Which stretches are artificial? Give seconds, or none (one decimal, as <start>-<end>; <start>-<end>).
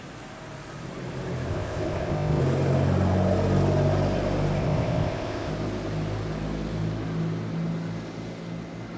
1.5-2.4; 4.6-5.5